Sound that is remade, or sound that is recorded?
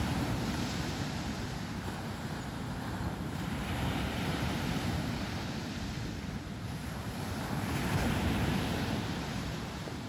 remade